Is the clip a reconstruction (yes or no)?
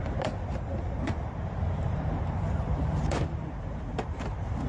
yes